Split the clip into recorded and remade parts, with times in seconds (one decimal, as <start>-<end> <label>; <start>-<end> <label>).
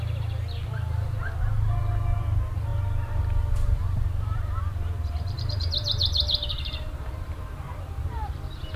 0.0-2.7 recorded; 2.7-7.4 remade; 7.4-8.8 recorded